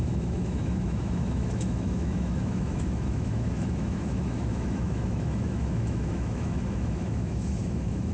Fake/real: fake